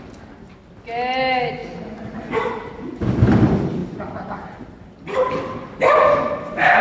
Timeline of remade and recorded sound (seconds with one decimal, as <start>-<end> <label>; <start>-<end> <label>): 0.0-6.8 recorded